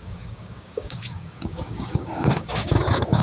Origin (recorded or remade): remade